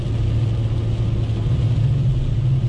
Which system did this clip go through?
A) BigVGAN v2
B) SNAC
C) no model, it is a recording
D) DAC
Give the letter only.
C